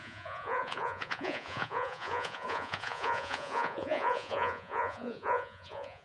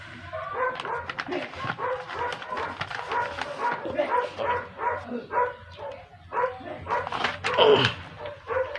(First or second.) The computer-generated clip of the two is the first